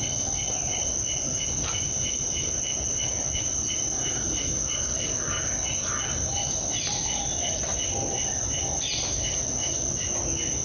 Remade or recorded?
recorded